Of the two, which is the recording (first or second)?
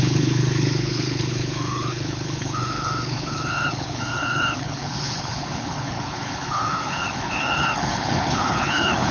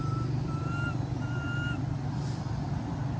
second